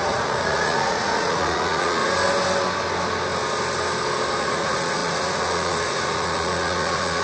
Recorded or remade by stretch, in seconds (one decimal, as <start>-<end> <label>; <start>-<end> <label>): 0.0-2.0 remade; 2.0-4.4 recorded; 4.4-7.2 remade